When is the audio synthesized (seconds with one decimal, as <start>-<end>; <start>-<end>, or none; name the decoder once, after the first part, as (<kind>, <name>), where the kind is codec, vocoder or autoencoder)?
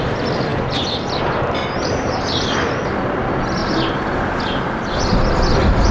0.0-3.6 (vocoder, BigVGAN v2); 5.5-5.9